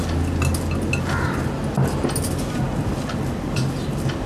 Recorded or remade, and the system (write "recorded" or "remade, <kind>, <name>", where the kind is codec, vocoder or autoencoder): recorded